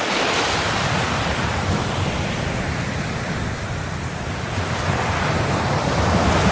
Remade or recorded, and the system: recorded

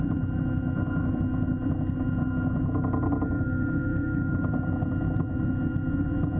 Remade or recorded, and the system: recorded